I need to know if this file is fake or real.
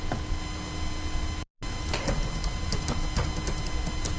real